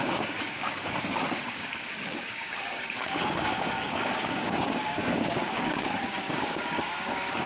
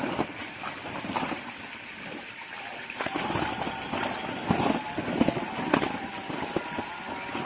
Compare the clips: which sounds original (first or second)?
second